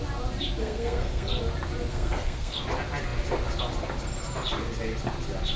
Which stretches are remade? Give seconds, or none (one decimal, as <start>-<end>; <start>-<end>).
0.6-1.4; 1.9-2.6